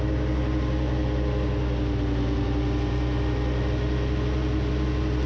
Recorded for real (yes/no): yes